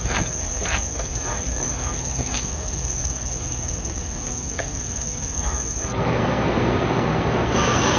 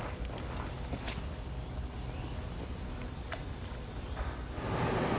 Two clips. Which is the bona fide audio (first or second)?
second